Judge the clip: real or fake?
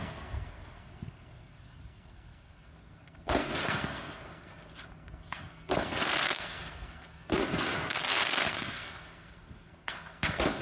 fake